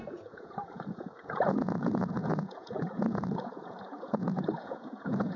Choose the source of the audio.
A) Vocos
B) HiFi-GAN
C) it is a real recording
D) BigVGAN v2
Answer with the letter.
A